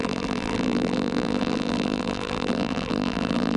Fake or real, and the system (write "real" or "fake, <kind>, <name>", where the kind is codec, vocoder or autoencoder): fake, vocoder, BigVGAN v2